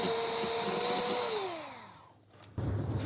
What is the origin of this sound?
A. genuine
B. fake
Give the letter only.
A